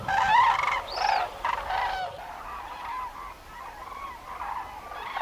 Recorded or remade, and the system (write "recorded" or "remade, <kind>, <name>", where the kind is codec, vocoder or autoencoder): remade, vocoder, BigVGAN v2